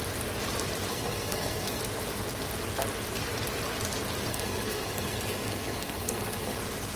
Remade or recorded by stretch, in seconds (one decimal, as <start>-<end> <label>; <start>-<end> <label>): 0.0-0.9 recorded; 0.9-1.8 remade; 1.8-4.3 recorded; 4.3-6.6 remade; 6.6-7.0 recorded